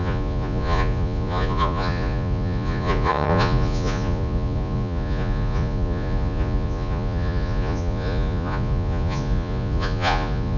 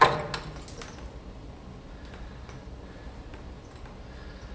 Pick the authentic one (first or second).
second